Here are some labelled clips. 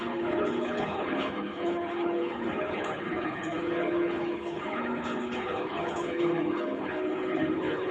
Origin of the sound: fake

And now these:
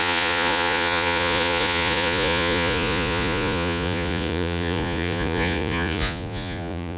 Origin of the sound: fake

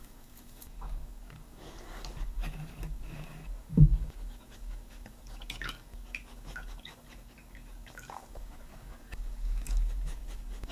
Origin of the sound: fake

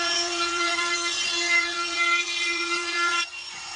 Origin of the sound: fake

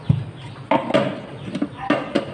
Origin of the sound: real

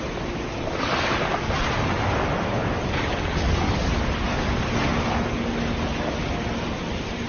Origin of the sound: real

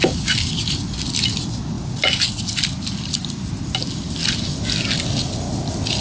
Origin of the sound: real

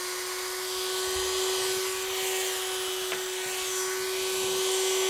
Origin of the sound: real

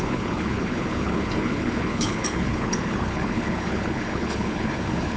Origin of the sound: fake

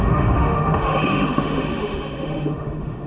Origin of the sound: fake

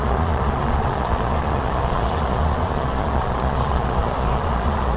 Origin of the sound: fake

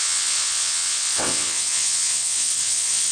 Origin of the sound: fake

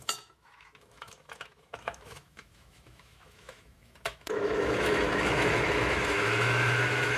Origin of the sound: fake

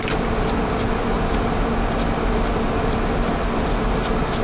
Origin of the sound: real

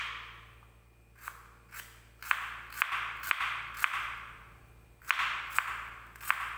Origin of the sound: real